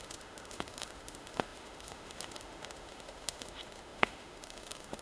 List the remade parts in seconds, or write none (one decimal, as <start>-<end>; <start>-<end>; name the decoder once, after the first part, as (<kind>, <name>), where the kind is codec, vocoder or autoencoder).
0.0-5.0 (autoencoder, DAC-VAE)